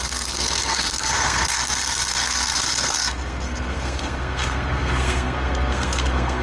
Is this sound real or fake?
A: fake